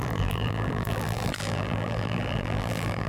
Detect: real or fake fake